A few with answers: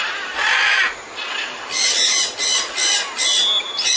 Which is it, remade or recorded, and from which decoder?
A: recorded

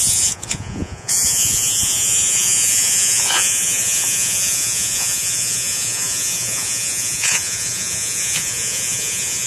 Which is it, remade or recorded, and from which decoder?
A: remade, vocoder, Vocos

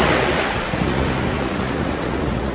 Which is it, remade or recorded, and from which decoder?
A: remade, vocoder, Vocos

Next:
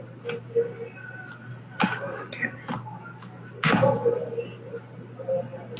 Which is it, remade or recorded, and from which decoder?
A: recorded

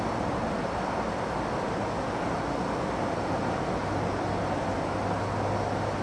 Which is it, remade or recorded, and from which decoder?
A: recorded